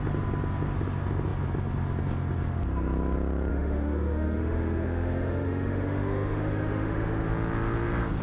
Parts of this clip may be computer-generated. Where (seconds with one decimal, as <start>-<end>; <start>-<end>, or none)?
3.5-7.3